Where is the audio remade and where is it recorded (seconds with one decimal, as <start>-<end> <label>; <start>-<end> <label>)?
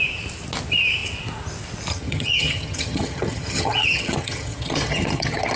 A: 0.0-1.9 recorded; 1.9-5.6 remade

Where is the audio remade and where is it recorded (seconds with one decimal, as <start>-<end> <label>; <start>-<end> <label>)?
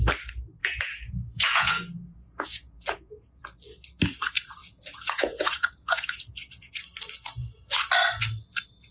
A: 0.0-0.6 recorded; 0.6-3.4 remade; 3.4-4.6 recorded; 4.6-6.7 remade; 6.7-8.9 recorded